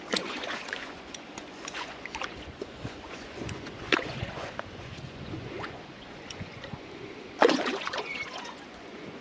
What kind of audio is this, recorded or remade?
remade